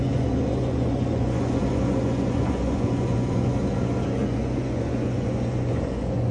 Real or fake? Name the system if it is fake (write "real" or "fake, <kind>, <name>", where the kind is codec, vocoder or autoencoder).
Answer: fake, vocoder, Vocos